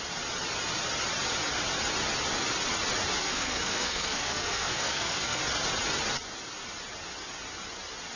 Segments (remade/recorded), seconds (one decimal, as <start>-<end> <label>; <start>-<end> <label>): 0.0-3.2 recorded; 3.2-5.4 remade; 5.4-8.2 recorded